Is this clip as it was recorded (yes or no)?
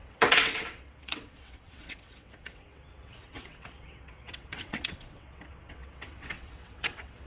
no